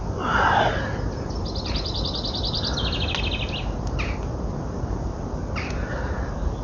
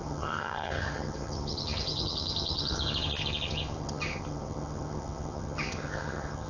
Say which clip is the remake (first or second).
second